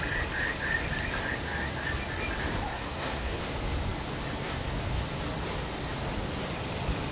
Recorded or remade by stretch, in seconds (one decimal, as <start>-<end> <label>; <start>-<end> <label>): 0.0-2.7 recorded; 2.7-3.4 remade; 3.4-7.1 recorded